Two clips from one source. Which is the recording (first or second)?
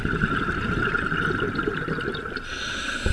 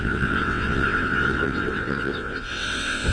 first